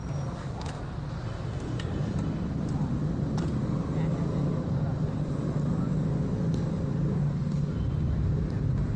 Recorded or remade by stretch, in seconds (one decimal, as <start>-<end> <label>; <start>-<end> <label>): 0.0-9.0 recorded